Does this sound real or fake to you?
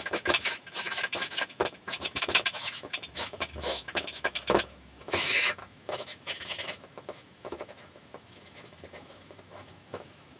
fake